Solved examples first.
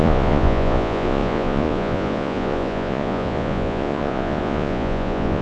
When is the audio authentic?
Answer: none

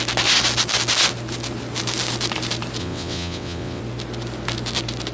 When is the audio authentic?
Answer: 0.0-2.8; 3.8-5.1

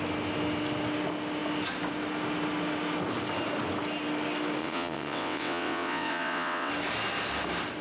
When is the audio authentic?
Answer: 0.0-4.6; 6.7-7.8

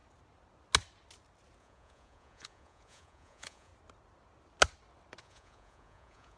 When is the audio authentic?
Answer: 0.0-1.6; 3.7-5.2

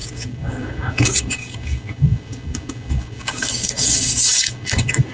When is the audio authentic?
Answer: none